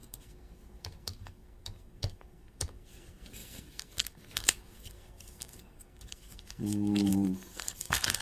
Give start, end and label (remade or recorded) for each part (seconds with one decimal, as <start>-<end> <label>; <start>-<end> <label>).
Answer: 0.0-8.2 remade